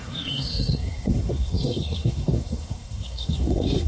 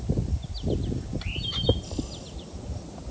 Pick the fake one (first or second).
first